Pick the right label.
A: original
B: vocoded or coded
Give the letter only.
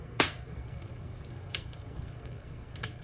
B